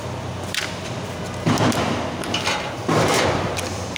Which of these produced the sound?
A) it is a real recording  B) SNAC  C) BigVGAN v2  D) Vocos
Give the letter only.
C